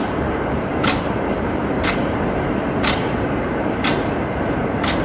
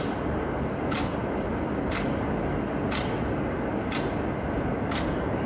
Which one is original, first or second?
second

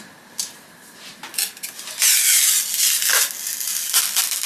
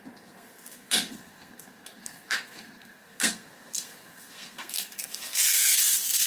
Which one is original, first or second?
first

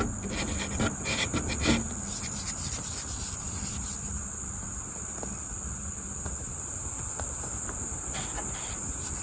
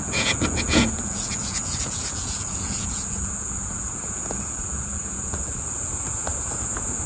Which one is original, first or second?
first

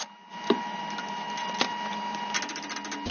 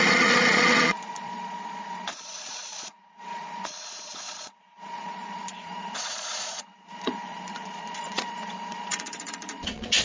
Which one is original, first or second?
first